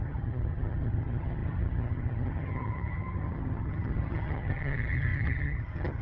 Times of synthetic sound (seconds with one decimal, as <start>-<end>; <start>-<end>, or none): 0.0-6.0